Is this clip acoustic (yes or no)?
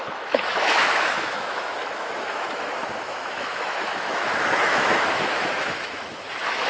no